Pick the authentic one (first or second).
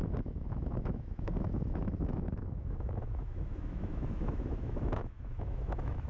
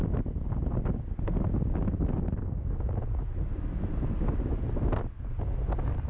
second